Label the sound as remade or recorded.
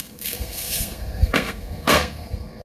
remade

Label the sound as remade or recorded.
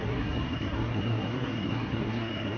remade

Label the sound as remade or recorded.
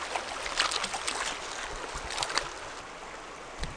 recorded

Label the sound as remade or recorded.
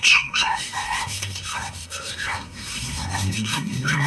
remade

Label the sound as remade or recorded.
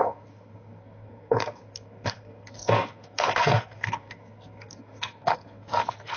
remade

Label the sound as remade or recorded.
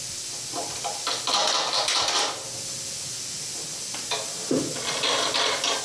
recorded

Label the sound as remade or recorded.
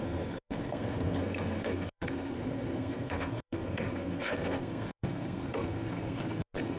remade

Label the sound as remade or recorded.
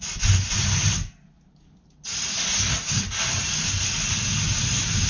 recorded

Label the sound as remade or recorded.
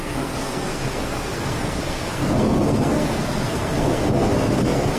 remade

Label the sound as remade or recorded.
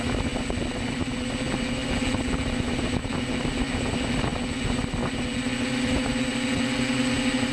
recorded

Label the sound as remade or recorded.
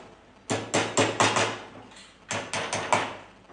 recorded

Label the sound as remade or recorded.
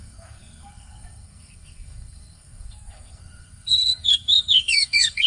remade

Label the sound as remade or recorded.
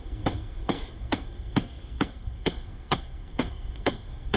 remade